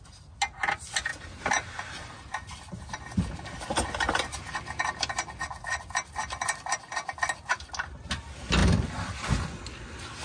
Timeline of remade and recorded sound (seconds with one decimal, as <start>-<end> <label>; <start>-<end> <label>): 0.0-10.2 recorded